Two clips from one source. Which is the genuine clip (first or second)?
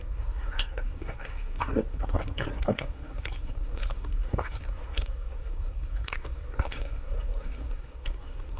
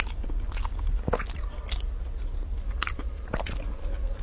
second